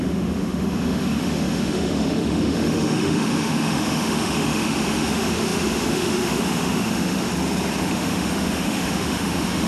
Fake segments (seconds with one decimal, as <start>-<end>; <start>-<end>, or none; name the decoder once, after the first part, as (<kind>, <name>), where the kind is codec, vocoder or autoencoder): 0.0-7.3 (autoencoder, DAC-VAE); 7.8-9.7